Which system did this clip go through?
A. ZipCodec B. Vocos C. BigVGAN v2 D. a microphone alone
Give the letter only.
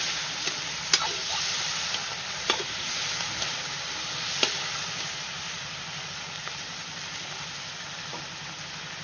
D